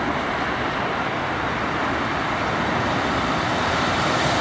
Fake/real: real